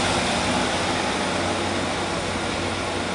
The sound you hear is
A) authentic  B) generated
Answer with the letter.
A